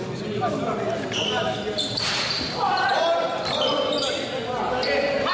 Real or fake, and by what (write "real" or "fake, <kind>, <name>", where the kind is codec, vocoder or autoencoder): real